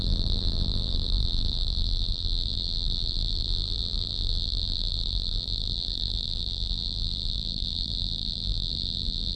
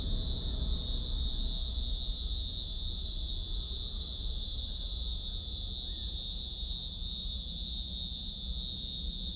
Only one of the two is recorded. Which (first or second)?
second